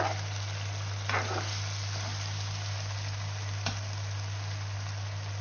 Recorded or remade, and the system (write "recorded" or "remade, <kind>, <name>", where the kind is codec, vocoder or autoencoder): recorded